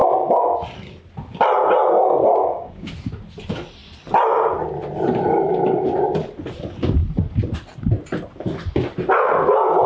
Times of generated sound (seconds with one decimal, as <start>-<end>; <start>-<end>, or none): 2.3-2.9